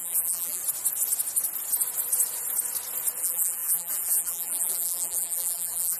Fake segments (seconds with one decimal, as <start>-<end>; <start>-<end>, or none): 0.0-0.6; 3.2-6.0

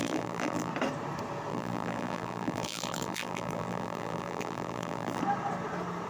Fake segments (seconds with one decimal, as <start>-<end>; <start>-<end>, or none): 0.0-0.7; 1.5-5.2

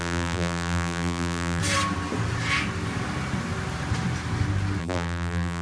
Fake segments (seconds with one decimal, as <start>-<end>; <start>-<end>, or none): 0.0-1.6; 4.8-5.6

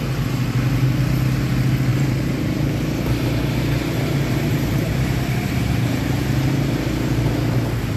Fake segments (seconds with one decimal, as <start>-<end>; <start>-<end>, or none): 1.9-6.5